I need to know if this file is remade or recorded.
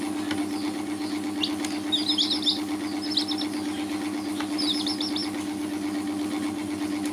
recorded